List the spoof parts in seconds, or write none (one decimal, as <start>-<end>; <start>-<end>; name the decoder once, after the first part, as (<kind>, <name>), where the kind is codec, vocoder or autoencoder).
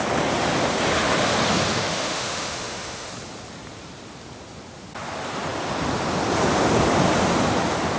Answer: 1.7-3.1 (autoencoder, DAC-VAE)